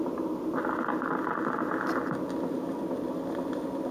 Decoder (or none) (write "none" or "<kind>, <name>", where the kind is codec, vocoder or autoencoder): vocoder, BigVGAN v2